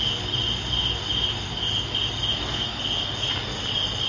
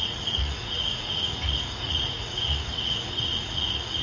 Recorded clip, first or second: first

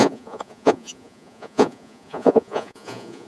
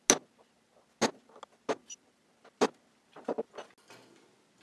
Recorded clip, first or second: second